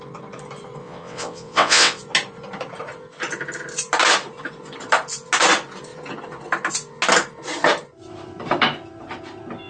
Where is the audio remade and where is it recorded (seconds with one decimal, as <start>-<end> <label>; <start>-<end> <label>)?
0.0-0.8 recorded; 0.8-2.0 remade; 2.0-9.7 recorded